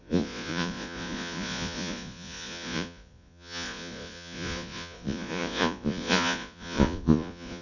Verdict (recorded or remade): remade